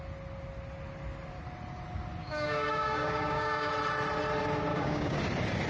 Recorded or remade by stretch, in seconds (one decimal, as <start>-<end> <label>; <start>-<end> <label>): 0.0-2.2 recorded; 2.2-3.7 remade; 3.7-4.7 recorded; 4.7-5.2 remade; 5.2-5.7 recorded